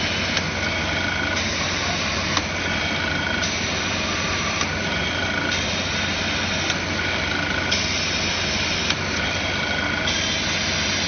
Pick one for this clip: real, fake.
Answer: real